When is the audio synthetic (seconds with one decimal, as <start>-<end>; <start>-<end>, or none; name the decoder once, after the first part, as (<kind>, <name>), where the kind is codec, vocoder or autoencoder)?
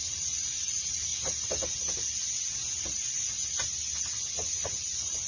0.0-1.1 (vocoder, Vocos); 4.3-5.3